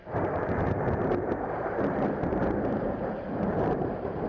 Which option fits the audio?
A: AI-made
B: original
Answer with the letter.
A